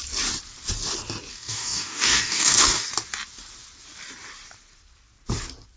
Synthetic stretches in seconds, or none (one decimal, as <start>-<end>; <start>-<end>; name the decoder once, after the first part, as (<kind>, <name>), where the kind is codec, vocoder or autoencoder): 1.3-2.9 (codec, DAC)

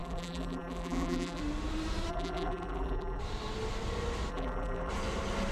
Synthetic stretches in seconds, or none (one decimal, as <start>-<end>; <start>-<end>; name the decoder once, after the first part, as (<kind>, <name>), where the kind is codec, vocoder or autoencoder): 0.0-1.4 (vocoder, BigVGAN v2); 2.1-3.2; 4.3-4.9

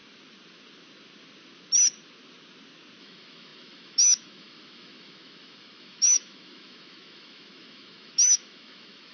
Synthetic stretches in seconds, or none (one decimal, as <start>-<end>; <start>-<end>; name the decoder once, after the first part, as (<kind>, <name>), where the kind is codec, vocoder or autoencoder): 3.0-9.1 (autoencoder, DAC-VAE)

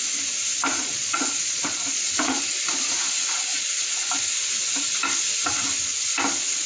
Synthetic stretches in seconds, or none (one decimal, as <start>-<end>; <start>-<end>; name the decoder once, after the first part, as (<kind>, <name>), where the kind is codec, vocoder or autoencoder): 0.7-2.5 (vocoder, Vocos); 3.5-4.1

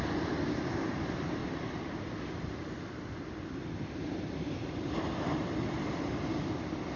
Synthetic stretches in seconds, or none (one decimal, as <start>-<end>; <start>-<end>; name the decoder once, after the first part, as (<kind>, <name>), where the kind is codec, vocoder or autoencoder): none

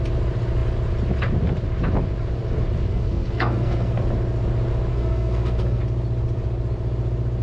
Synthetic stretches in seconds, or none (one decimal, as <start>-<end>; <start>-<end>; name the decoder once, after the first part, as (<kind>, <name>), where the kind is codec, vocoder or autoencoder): 2.9-4.0 (codec, SNAC); 4.9-5.8

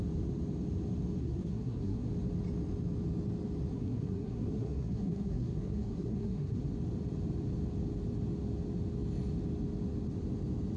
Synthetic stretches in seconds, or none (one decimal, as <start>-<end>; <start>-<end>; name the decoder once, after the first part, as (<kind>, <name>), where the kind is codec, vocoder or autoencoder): 1.2-2.1 (codec, SNAC); 3.7-6.6